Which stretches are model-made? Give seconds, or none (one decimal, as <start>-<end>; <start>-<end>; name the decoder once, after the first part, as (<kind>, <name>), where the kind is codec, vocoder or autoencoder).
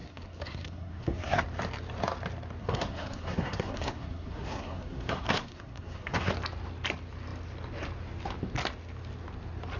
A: 0.0-1.4 (codec, SNAC); 2.6-6.3